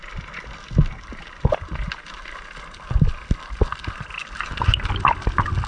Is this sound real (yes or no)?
yes